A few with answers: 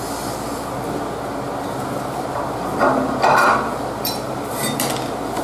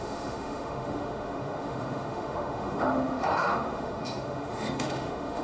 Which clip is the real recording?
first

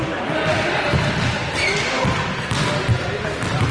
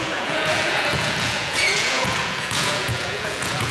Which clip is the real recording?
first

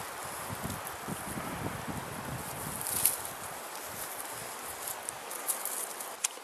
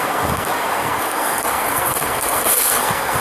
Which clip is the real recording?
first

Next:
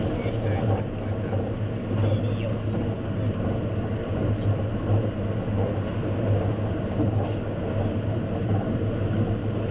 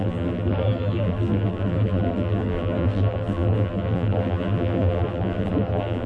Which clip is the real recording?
first